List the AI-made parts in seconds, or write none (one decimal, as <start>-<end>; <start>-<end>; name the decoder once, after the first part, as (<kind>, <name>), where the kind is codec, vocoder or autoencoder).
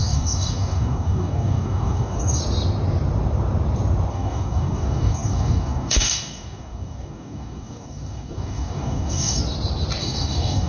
0.0-2.4 (codec, DAC); 4.1-9.4; 10.0-10.7